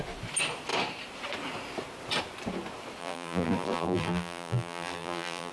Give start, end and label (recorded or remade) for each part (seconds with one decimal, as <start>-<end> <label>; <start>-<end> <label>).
0.0-3.0 recorded; 3.0-5.5 remade